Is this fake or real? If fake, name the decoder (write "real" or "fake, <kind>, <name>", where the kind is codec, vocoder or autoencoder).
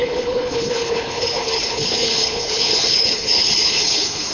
fake, codec, HILCodec